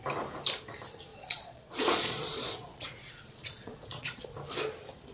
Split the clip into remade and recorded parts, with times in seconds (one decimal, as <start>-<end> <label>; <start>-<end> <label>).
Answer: 0.0-1.1 recorded; 1.1-4.2 remade; 4.2-5.1 recorded